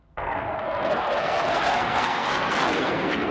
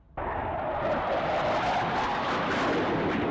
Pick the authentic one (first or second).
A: second